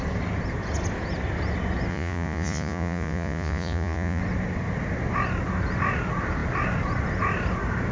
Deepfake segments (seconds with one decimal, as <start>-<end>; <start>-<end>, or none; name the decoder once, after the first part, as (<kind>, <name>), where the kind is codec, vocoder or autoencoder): 1.9-4.2 (vocoder, Vocos)